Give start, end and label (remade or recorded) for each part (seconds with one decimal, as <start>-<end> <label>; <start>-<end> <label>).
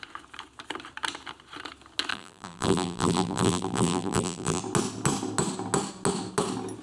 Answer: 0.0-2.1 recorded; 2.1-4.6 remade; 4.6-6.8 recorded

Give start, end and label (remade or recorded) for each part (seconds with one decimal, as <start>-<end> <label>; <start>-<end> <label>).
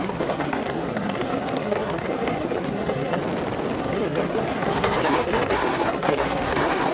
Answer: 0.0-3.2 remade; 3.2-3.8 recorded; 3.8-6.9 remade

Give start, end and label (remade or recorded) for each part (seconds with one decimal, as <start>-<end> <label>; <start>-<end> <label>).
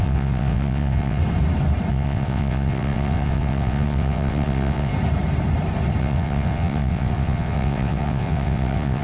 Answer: 0.0-1.2 remade; 1.2-1.9 recorded; 1.9-4.9 remade; 4.9-6.0 recorded; 6.0-9.0 remade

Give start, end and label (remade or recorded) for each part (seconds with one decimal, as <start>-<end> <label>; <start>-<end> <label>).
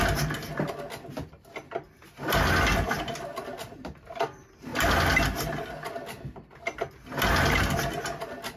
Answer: 0.0-8.6 recorded